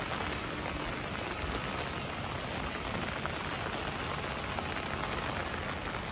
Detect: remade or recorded recorded